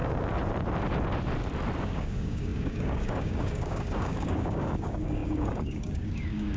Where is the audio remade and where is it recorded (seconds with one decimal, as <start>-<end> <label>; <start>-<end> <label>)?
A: 0.0-1.8 recorded; 1.8-6.6 remade